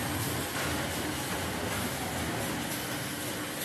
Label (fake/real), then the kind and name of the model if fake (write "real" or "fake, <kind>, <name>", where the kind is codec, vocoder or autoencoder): real